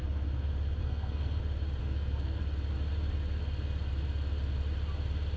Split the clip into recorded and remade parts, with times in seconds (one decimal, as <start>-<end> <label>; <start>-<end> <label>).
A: 0.0-0.8 recorded; 0.8-1.4 remade; 1.4-1.8 recorded; 1.8-2.4 remade; 2.4-5.4 recorded